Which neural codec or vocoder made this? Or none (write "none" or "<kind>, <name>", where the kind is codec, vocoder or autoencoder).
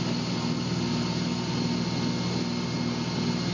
none